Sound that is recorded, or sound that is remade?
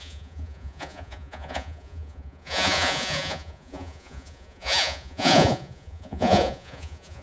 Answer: remade